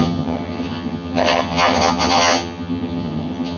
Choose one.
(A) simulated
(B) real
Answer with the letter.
A